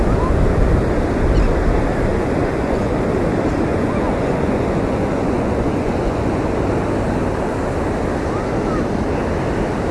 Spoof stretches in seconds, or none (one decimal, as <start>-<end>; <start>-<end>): 2.1-2.9; 3.7-6.4